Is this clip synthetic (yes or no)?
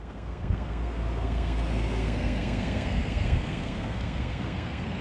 yes